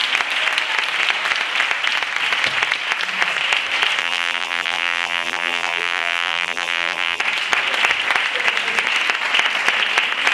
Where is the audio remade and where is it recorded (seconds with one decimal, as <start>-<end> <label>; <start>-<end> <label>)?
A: 0.0-4.0 recorded; 4.0-7.2 remade; 7.2-10.3 recorded